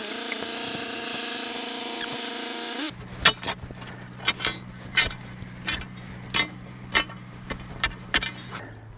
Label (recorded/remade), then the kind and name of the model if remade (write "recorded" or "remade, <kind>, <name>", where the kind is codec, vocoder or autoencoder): recorded